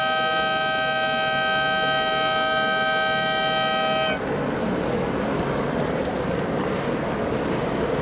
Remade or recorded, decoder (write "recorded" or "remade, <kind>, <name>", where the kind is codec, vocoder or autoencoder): recorded